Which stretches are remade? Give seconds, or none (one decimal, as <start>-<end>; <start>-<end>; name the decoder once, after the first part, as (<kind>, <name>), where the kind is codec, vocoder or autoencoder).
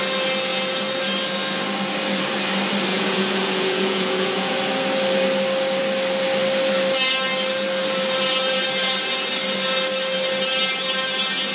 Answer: 2.9-4.6 (vocoder, Vocos)